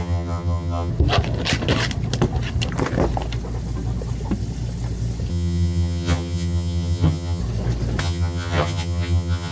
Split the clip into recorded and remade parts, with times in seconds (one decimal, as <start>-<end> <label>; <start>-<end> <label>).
0.0-0.9 remade; 0.9-5.3 recorded; 5.3-7.4 remade; 7.4-8.0 recorded; 8.0-9.5 remade